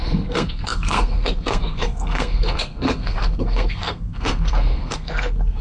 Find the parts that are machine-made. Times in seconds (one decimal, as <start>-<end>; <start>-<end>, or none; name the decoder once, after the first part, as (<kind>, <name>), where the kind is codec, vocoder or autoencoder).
0.0-5.6 (codec, SNAC)